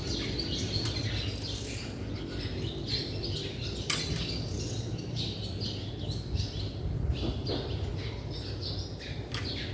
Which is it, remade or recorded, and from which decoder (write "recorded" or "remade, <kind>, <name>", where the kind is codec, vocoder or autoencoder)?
recorded